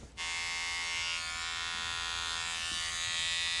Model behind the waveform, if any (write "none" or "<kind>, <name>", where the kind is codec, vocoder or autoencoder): none